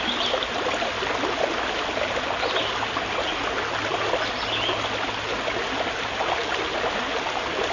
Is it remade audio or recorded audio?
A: recorded